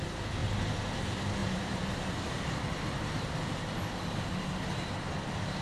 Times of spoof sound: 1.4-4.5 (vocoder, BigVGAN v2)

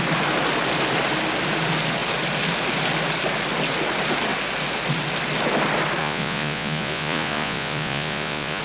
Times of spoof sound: 6.0-8.6 (vocoder, Vocos)

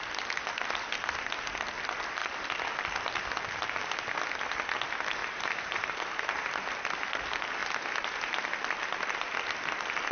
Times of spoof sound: 5.2-6.5 (vocoder, BigVGAN v2)